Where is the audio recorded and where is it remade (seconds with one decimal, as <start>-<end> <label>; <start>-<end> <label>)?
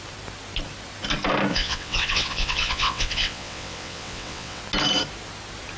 0.0-1.5 recorded; 1.5-4.6 remade; 4.6-5.8 recorded